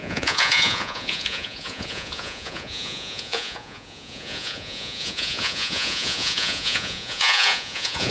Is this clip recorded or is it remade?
remade